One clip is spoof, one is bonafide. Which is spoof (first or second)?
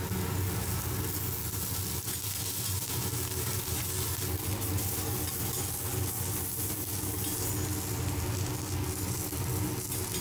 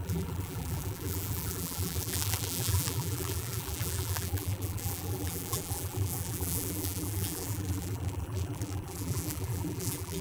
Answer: second